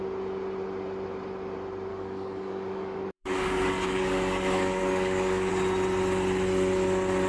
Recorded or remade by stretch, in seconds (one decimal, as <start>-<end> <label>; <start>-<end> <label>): 0.0-1.9 recorded; 1.9-5.5 remade; 5.5-7.3 recorded